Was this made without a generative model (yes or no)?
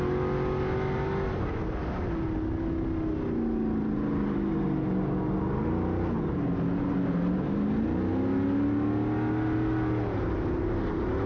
yes